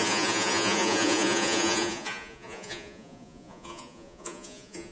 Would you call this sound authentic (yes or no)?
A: no